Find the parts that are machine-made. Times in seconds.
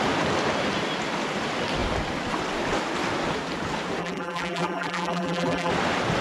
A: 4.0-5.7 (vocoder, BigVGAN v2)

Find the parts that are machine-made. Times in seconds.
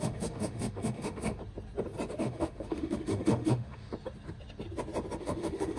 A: 0.0-1.4 (autoencoder, DAC-VAE); 2.2-3.9; 5.2-5.8